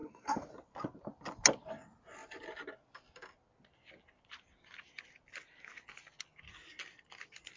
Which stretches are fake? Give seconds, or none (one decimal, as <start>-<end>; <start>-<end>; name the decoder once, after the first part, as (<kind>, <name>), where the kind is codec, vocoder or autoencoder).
0.0-0.5 (codec, SNAC)